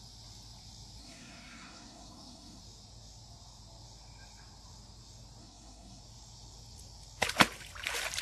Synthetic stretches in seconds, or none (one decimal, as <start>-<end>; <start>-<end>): 1.0-2.6; 5.4-6.0